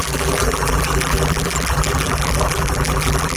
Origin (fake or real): fake